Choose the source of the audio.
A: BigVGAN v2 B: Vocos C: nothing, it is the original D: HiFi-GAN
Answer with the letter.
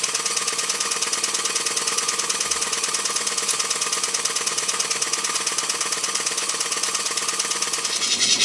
B